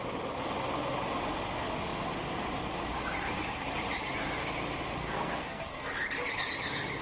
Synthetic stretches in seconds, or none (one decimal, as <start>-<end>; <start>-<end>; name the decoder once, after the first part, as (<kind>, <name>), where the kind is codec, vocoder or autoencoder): 5.0-5.9 (codec, SNAC)